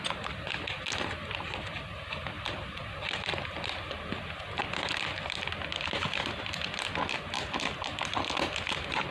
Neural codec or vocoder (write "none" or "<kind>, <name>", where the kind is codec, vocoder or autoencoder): none